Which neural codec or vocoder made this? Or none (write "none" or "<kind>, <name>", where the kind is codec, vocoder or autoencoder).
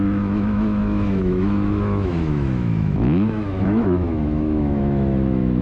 autoencoder, DAC-VAE